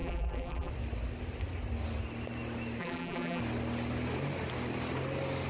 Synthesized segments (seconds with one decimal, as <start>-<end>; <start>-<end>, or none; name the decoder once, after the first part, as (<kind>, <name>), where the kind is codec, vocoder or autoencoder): 0.0-0.7 (vocoder, BigVGAN v2); 2.8-3.4